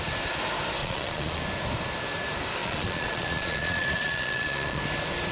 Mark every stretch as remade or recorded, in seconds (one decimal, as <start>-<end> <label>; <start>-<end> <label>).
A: 0.0-0.8 recorded; 0.8-1.4 remade; 1.4-2.6 recorded; 2.6-4.8 remade; 4.8-5.3 recorded